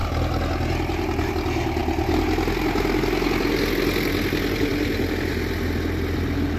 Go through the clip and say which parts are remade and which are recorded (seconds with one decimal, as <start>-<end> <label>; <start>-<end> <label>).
0.0-6.6 recorded